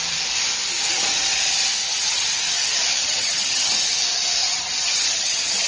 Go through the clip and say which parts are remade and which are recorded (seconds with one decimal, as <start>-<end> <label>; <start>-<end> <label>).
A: 0.0-1.8 recorded; 1.8-2.3 remade; 2.3-3.0 recorded; 3.0-3.7 remade; 3.7-4.4 recorded; 4.4-5.7 remade